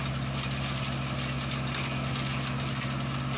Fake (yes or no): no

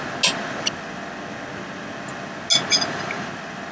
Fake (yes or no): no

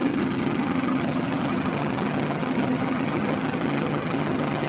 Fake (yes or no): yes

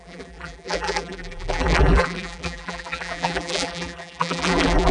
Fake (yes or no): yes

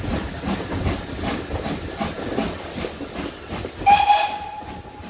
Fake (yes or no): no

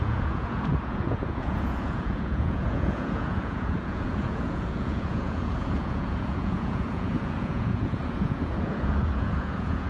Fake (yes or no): yes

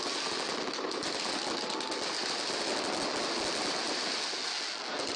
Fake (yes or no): no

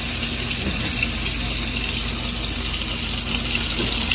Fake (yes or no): no